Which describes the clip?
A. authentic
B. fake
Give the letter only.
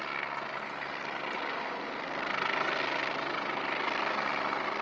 A